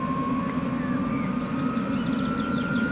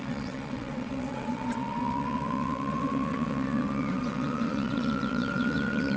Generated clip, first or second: second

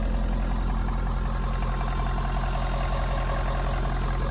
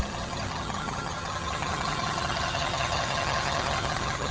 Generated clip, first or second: second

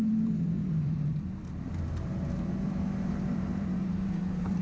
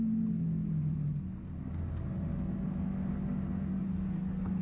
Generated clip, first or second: first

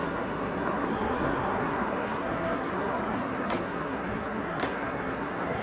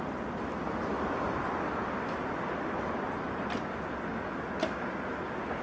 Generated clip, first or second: first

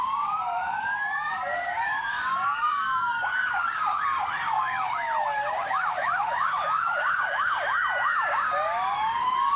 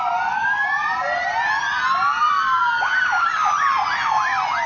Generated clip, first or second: first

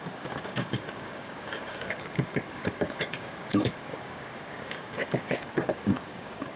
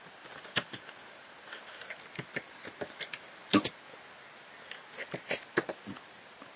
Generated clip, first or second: first